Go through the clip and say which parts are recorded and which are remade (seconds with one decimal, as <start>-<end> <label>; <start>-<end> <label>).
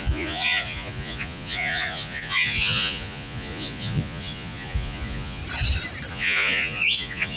0.0-5.4 remade; 5.4-6.1 recorded; 6.1-7.4 remade